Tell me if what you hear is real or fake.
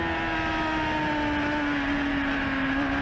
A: real